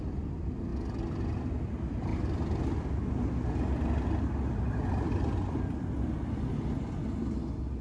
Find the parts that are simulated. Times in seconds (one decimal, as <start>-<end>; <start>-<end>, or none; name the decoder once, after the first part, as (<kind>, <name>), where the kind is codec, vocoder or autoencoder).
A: none